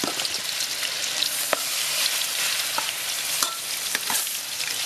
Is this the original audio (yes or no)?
no